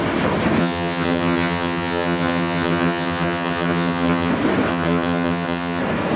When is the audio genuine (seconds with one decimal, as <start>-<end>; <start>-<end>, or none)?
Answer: 0.0-0.6; 4.3-4.7; 5.8-6.2